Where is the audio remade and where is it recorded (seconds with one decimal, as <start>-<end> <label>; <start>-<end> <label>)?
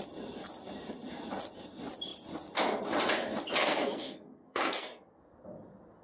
0.0-3.6 recorded; 3.6-5.2 remade; 5.2-6.0 recorded